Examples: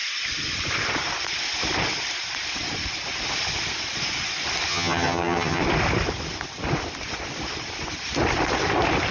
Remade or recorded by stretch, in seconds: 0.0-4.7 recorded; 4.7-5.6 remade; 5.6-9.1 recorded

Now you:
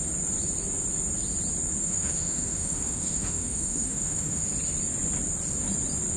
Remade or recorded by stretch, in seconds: 0.0-1.8 recorded; 1.8-4.5 remade; 4.5-6.2 recorded

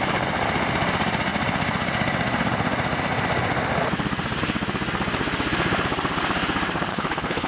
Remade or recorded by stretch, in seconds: 0.0-6.9 recorded; 6.9-7.5 remade

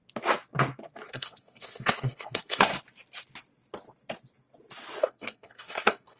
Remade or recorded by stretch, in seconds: 0.0-1.1 recorded; 1.1-2.7 remade; 2.7-5.0 recorded; 5.0-6.2 remade